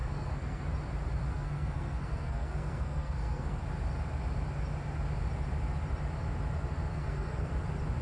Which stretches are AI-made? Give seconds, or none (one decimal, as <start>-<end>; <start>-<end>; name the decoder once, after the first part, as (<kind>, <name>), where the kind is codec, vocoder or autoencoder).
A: 0.0-0.7 (codec, SNAC); 1.3-3.6; 6.9-7.5